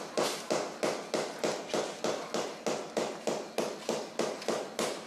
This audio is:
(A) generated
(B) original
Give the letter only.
B